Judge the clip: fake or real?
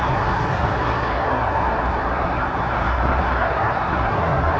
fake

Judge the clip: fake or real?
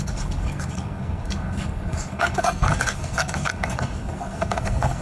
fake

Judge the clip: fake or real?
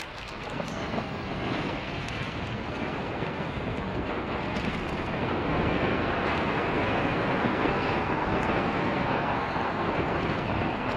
fake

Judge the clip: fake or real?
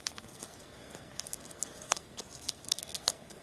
fake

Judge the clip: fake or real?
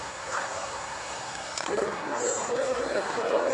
fake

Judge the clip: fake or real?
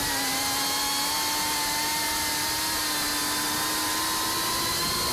real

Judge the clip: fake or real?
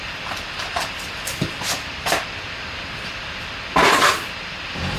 real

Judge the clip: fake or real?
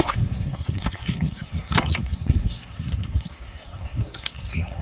fake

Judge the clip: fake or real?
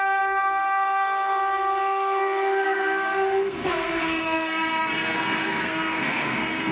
fake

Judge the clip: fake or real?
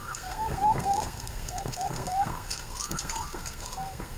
fake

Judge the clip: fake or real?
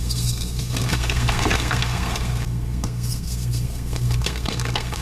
fake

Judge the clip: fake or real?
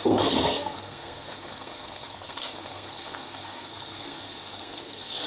fake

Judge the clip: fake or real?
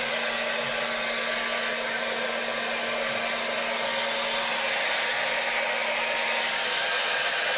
real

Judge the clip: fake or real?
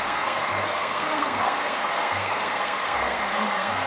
fake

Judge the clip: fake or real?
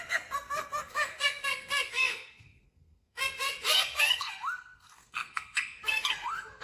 fake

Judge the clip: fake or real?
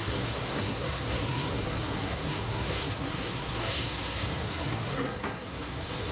fake